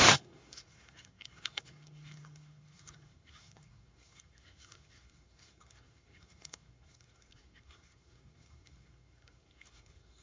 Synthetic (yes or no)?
yes